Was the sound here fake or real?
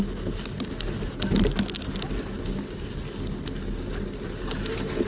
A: real